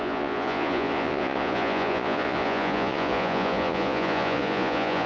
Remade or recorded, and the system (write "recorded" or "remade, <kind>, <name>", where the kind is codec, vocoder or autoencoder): remade, vocoder, Vocos